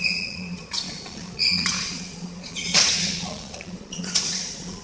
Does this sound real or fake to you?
fake